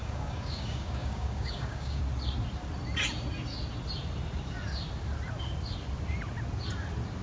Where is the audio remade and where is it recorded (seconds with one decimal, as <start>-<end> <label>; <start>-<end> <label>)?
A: 0.0-2.0 remade; 2.0-7.2 recorded